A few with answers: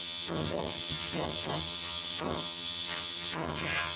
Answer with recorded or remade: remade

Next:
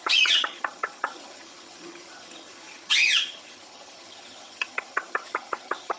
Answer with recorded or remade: remade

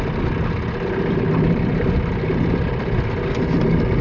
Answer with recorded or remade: recorded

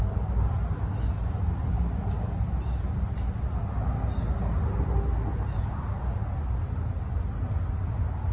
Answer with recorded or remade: recorded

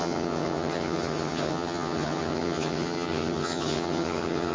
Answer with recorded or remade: remade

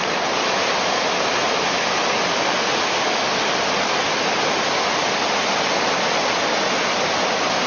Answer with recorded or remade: recorded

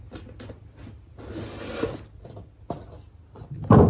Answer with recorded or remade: recorded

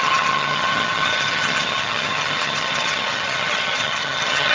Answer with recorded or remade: remade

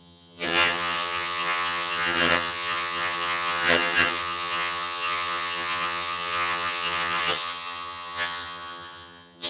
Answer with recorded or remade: remade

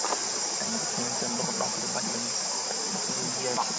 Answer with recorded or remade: recorded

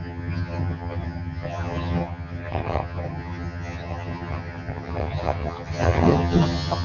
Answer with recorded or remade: remade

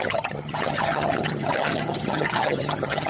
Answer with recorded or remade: remade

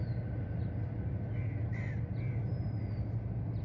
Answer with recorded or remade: recorded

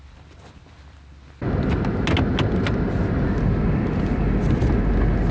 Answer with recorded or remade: recorded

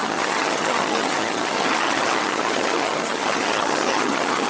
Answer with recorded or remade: remade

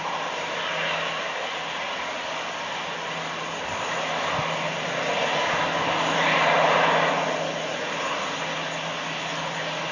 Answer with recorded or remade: recorded